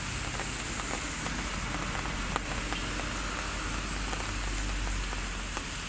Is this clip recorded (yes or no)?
yes